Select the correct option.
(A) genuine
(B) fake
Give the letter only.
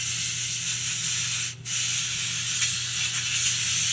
A